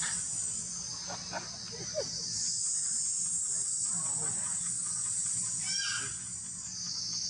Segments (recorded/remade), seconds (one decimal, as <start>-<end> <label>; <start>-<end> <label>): 0.0-7.3 recorded